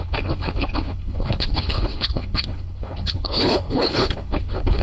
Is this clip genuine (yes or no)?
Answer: no